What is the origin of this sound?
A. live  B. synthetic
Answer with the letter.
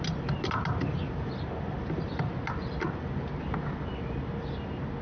A